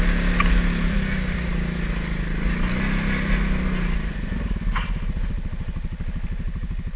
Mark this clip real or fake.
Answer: real